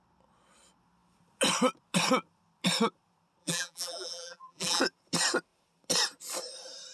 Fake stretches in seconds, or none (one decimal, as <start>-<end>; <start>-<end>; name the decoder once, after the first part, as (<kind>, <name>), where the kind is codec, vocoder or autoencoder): 3.4-4.8 (vocoder, BigVGAN v2)